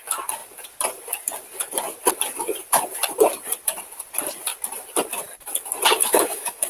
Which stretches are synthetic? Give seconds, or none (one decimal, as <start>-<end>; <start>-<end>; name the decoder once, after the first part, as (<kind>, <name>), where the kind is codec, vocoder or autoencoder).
6.0-6.7 (autoencoder, DAC-VAE)